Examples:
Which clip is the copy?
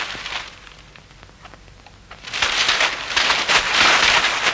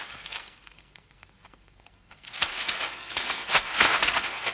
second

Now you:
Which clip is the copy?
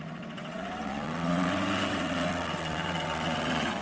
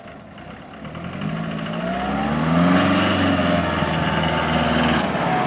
first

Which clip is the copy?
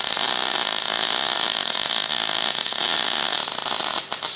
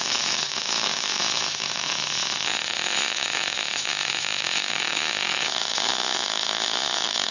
second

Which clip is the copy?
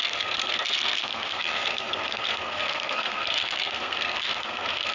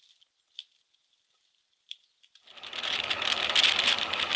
first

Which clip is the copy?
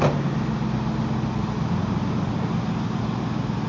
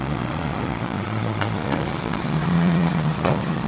second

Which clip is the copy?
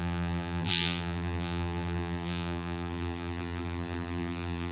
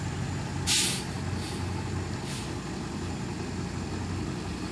first